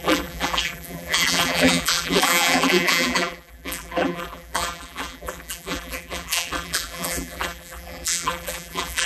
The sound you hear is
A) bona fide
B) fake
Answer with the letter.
B